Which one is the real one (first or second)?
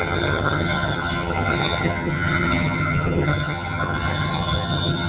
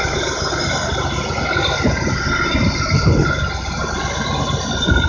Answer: second